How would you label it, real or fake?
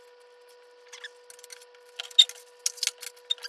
real